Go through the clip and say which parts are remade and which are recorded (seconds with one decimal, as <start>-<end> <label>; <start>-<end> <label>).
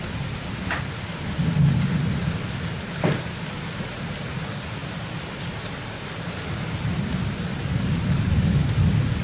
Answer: 0.0-9.2 recorded